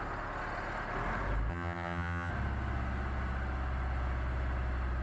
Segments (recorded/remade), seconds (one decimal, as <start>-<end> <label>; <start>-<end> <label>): 0.0-1.5 recorded; 1.5-2.3 remade; 2.3-5.0 recorded